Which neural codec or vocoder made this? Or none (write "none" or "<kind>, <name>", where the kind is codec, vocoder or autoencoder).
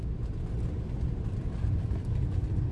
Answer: none